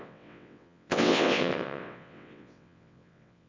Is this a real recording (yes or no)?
no